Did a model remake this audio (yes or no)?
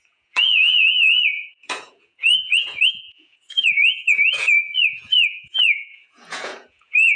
yes